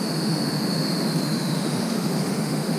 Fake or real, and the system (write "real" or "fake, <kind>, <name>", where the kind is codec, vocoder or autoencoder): fake, autoencoder, DAC-VAE